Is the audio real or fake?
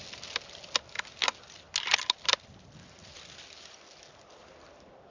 real